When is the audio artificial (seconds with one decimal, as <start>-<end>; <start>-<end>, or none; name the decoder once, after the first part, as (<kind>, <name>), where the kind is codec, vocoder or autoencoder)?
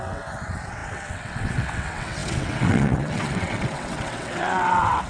0.0-5.1 (vocoder, WaveNeXt)